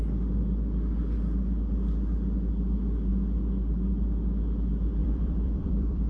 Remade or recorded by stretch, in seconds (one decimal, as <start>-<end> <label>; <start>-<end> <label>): 0.0-5.0 recorded; 5.0-6.1 remade